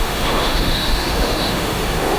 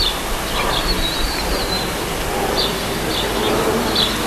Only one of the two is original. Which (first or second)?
second